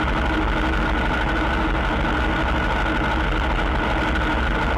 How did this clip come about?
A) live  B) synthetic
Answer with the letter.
A